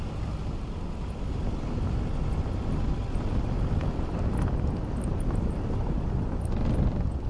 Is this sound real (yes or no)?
yes